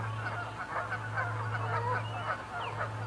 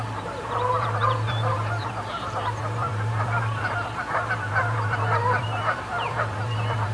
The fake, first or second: second